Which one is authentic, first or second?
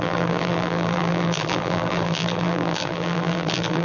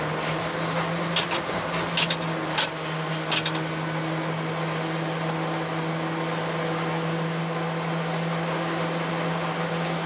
second